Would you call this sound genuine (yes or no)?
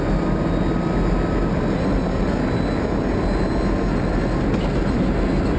yes